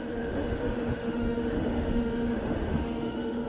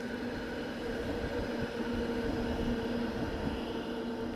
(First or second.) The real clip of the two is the second